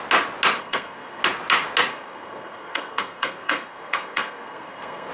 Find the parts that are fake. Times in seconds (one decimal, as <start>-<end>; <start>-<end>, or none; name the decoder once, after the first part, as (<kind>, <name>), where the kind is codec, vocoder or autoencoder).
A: 0.6-1.2 (codec, SNAC); 1.9-5.1